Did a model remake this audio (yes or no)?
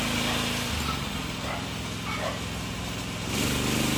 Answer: no